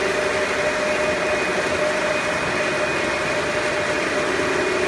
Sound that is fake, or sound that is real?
real